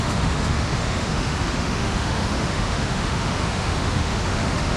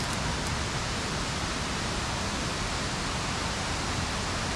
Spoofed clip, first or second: first